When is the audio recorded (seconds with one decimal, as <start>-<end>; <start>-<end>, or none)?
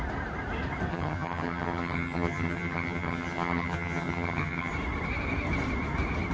0.0-0.9; 4.7-6.3